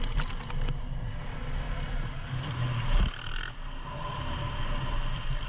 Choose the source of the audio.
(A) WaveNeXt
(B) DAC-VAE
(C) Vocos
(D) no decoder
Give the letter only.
D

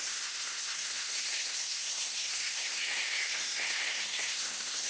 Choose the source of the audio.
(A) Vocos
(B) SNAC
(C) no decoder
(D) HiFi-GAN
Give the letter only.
B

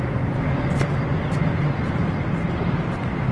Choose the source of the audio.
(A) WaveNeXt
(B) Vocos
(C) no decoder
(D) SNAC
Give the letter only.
C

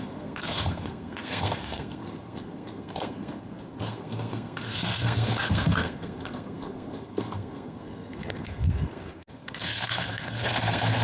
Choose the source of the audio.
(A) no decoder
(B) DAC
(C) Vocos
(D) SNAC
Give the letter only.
D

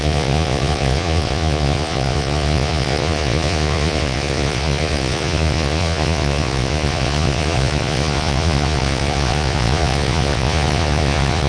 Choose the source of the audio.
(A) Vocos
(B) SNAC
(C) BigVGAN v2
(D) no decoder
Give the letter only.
A